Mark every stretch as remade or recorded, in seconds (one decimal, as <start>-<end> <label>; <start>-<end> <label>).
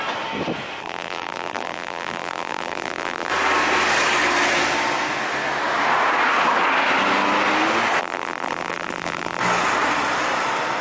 0.0-0.8 recorded; 0.8-3.3 remade; 3.3-8.0 recorded; 8.0-9.4 remade; 9.4-10.8 recorded